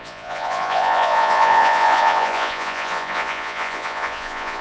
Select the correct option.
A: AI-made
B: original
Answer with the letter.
A